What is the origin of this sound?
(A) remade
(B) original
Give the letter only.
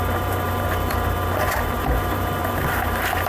A